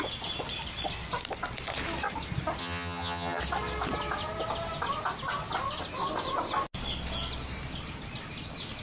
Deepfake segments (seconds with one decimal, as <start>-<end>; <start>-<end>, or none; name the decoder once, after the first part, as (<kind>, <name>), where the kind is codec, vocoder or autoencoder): 2.6-3.4 (vocoder, HiFi-GAN)